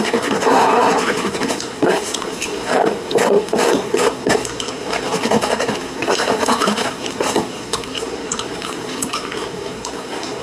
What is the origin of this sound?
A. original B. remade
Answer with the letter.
B